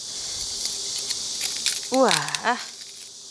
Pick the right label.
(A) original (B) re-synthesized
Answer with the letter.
A